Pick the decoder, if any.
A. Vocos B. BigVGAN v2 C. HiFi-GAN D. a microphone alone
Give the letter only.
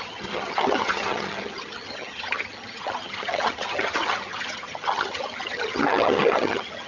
C